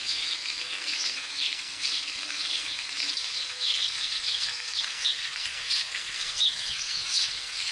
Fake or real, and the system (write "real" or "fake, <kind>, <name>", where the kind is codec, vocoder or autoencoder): fake, codec, SNAC